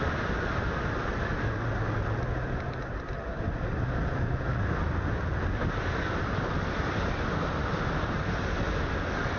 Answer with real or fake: real